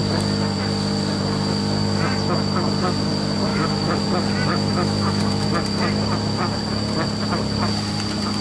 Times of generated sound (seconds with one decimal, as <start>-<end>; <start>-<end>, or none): 3.5-4.0; 4.5-5.2